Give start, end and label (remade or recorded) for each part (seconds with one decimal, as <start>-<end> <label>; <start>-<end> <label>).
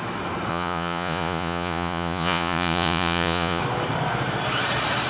0.0-0.5 recorded; 0.5-3.6 remade; 3.6-5.1 recorded